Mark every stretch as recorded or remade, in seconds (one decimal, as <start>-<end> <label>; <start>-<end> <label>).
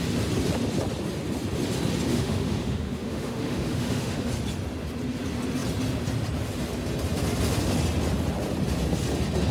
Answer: 0.0-2.1 recorded; 2.1-4.3 remade; 4.3-9.5 recorded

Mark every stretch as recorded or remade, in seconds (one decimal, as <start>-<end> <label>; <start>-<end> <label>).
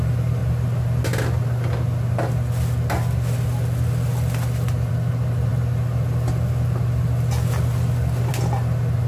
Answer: 0.0-9.1 recorded